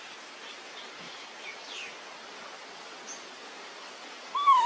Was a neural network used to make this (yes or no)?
no